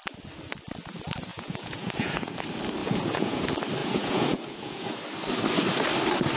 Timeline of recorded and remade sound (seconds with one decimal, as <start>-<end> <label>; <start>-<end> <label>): 0.0-1.3 recorded; 1.3-2.4 remade; 2.4-2.8 recorded; 2.8-3.4 remade; 3.4-3.8 recorded; 3.8-5.0 remade; 5.0-6.4 recorded